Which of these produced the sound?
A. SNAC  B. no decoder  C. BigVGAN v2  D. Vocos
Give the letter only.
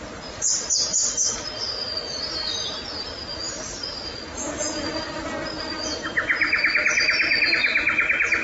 B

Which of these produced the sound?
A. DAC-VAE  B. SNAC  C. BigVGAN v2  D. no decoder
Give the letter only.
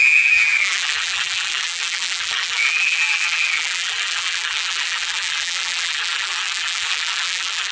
C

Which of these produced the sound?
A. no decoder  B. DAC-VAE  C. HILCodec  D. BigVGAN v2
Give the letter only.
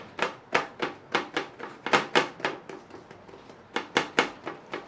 A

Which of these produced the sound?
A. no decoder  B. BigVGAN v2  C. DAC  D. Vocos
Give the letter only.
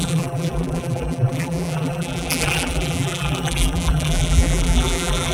B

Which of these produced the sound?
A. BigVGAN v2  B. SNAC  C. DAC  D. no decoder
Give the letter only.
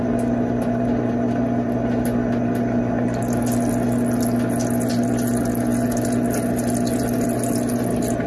D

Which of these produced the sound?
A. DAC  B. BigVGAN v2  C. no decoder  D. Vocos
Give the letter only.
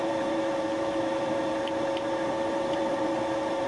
B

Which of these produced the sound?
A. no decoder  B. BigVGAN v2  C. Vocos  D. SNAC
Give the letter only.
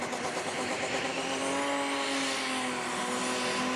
A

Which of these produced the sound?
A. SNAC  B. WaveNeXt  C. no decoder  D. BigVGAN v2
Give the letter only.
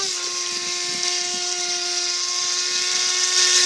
C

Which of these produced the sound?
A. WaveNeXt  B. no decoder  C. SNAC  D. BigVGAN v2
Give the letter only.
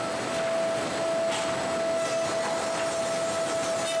B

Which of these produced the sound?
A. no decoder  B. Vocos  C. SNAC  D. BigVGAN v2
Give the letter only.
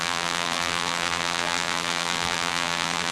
D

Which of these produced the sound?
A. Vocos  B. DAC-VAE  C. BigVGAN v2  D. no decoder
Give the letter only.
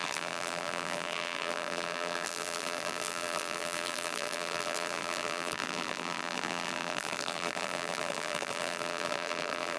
C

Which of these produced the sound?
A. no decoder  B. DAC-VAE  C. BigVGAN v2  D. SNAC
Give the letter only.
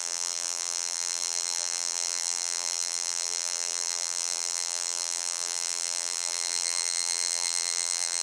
C